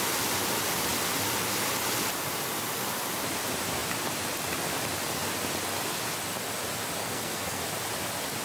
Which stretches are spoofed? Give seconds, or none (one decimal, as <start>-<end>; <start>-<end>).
7.0-7.6